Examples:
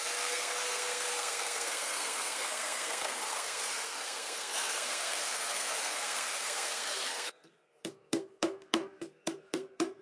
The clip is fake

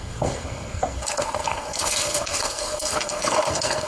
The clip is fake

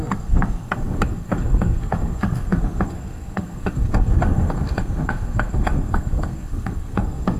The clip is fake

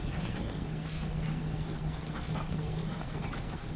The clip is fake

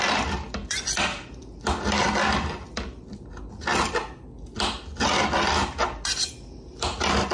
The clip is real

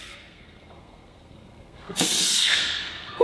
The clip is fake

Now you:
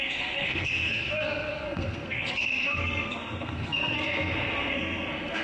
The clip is fake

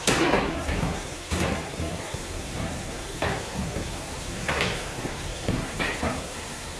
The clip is fake